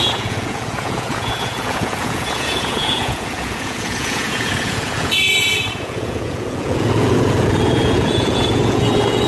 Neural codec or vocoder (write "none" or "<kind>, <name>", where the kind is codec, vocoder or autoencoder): vocoder, Vocos